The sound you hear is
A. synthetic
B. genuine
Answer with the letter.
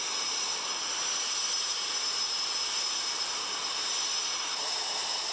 B